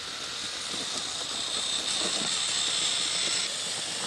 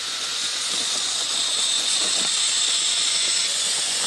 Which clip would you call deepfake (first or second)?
second